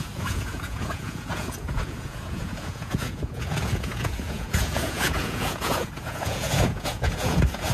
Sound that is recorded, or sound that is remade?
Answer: remade